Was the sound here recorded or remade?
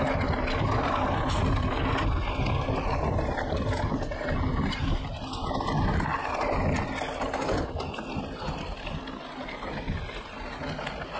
recorded